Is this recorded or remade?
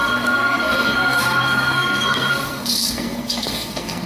remade